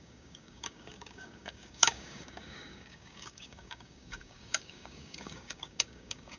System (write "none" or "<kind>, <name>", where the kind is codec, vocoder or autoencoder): codec, DAC